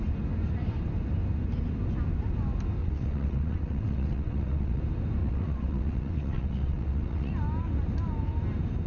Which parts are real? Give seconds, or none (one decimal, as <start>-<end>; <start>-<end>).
0.0-2.8; 4.8-5.2; 7.3-8.9